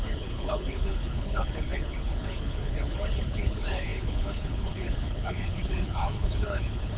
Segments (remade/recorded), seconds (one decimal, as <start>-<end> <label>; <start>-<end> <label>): 0.0-7.0 remade